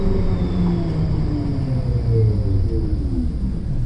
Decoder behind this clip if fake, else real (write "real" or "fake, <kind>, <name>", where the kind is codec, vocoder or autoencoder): real